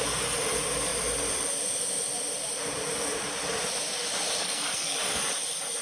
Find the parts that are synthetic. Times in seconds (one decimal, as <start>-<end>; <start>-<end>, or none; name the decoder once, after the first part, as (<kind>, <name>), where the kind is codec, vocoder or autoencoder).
4.4-5.0 (codec, SNAC)

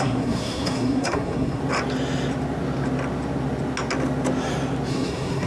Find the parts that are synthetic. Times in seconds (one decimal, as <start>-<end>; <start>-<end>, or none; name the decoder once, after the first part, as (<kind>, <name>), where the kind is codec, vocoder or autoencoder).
0.0-1.6 (codec, SNAC); 4.9-5.5